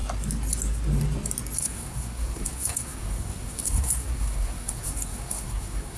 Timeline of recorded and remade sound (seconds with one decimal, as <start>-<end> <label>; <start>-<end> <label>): 0.0-1.6 recorded; 1.6-6.0 remade